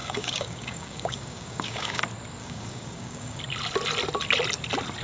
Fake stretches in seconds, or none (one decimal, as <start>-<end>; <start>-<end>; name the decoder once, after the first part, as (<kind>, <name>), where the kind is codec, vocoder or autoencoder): 0.0-2.0 (codec, DAC); 2.4-3.4